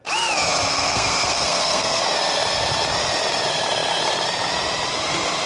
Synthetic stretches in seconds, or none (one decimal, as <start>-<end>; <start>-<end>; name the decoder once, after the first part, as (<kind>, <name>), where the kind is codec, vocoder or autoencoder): 0.7-2.0 (codec, SNAC)

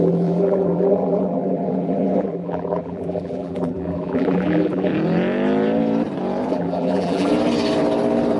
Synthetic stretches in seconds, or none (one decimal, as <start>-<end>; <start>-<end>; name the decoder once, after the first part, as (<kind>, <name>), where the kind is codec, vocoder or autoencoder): 0.0-4.9 (vocoder, BigVGAN v2); 6.5-7.3

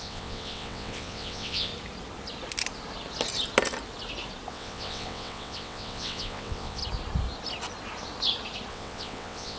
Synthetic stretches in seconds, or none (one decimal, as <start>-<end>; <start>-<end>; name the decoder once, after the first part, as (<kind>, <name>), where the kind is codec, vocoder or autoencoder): 0.0-1.7 (vocoder, WaveNeXt); 4.5-6.8; 8.7-9.6

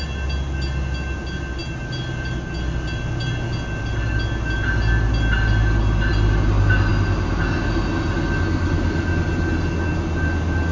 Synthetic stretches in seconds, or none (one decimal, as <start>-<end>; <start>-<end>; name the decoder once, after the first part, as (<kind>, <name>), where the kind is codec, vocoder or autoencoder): none